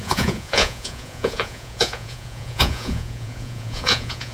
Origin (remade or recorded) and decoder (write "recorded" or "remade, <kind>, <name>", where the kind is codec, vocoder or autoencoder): remade, vocoder, Vocos